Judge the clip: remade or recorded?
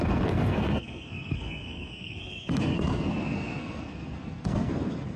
remade